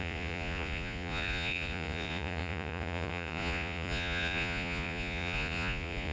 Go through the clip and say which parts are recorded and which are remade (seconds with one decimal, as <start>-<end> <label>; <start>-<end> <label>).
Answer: 0.0-6.1 remade